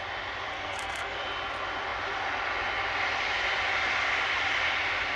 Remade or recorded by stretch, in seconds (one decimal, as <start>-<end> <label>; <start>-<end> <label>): 0.0-0.5 recorded; 0.5-1.2 remade; 1.2-5.2 recorded